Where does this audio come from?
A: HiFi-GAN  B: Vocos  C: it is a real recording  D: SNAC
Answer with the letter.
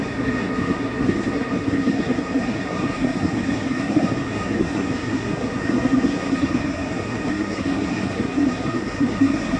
D